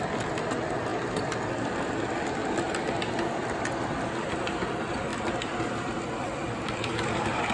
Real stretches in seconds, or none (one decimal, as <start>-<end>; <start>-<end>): none